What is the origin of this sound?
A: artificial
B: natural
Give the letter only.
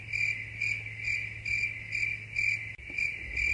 B